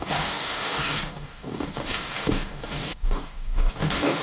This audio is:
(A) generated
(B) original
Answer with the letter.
A